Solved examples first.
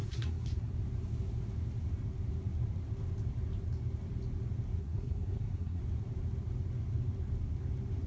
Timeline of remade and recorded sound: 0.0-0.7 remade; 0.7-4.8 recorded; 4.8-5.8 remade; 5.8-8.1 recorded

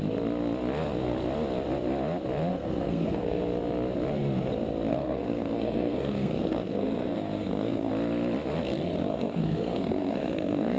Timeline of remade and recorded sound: 0.0-2.5 recorded; 2.5-3.4 remade; 3.4-4.9 recorded; 4.9-7.9 remade; 7.9-9.1 recorded; 9.1-10.8 remade